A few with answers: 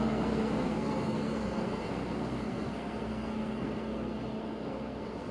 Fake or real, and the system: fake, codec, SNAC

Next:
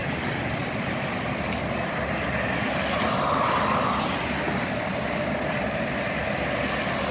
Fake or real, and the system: real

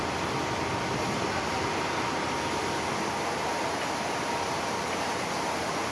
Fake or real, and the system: real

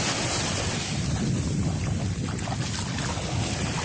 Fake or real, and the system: real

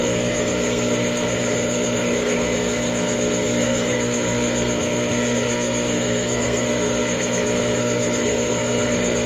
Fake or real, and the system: fake, codec, SNAC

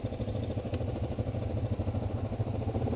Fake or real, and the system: real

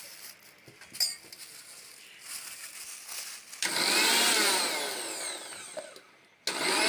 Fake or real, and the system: real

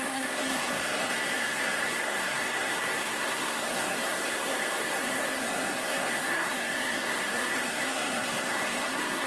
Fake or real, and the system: fake, codec, SNAC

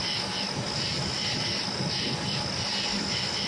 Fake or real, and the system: real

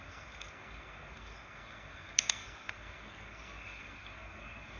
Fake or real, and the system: fake, codec, SNAC